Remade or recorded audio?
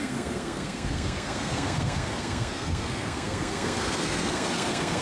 remade